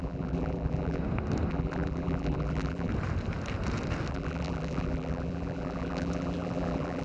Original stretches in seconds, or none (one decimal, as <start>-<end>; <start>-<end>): 1.0-1.5; 2.9-4.1